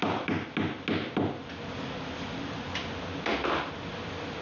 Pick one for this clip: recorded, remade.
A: recorded